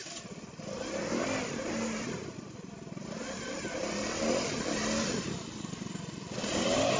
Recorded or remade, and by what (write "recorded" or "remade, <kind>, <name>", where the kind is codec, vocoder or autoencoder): recorded